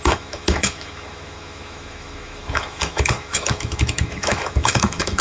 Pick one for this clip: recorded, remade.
remade